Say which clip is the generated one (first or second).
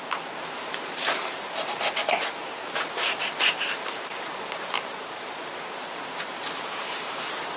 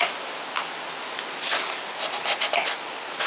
first